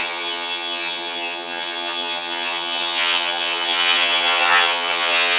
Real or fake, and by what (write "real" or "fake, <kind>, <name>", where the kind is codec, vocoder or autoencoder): fake, vocoder, HiFi-GAN